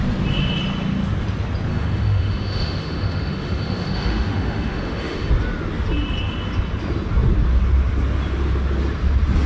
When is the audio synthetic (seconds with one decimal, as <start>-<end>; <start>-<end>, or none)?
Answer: 1.7-5.3